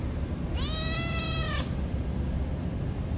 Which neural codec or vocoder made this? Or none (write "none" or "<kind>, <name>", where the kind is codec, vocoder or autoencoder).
none